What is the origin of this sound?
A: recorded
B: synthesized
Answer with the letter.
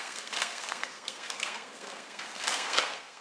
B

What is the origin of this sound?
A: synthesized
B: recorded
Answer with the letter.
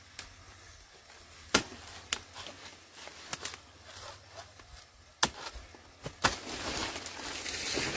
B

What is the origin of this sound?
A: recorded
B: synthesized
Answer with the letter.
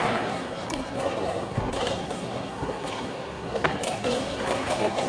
B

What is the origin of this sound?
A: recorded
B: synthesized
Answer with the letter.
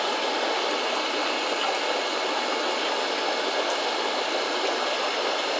A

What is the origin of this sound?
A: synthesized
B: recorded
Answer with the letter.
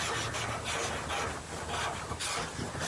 B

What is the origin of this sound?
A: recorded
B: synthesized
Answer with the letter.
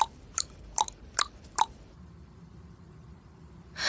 B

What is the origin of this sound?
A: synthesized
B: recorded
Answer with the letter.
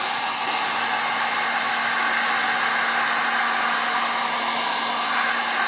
B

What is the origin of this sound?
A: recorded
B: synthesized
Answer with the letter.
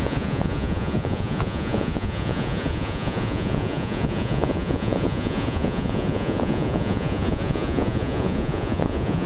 B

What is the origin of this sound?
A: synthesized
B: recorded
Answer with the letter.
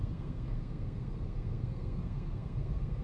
A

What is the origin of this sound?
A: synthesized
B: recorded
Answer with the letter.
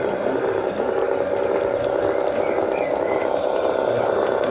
B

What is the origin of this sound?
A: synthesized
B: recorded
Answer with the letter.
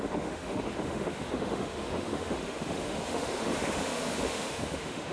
A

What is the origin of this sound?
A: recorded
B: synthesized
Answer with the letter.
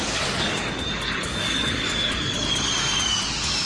B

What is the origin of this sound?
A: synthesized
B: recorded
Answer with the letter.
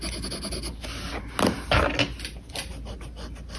B